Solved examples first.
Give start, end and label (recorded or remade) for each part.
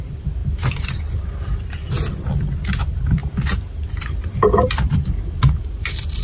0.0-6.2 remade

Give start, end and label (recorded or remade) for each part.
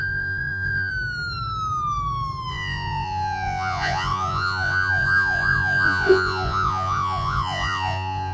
0.0-0.9 remade; 0.9-2.5 recorded; 2.5-8.3 remade